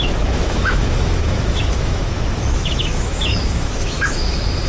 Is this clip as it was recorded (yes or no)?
no